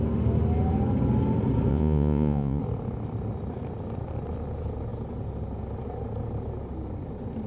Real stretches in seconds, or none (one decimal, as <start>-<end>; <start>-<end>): 0.0-1.7; 2.6-7.5